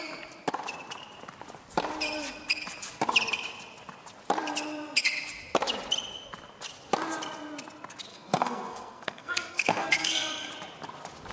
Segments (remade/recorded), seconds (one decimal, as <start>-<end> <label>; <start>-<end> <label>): 0.0-8.1 recorded; 8.1-10.5 remade; 10.5-11.3 recorded